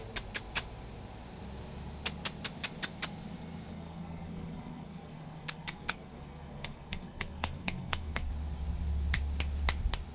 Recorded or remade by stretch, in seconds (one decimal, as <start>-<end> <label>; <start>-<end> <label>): 0.0-3.7 recorded; 3.7-8.3 remade; 8.3-10.1 recorded